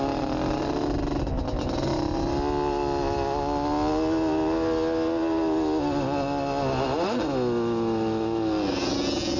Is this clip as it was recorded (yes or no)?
yes